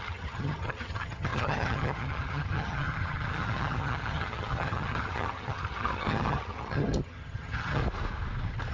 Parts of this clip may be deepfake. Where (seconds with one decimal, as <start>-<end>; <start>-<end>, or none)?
0.0-7.8